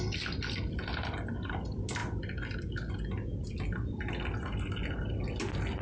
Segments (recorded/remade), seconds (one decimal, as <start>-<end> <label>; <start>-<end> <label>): 0.0-5.8 recorded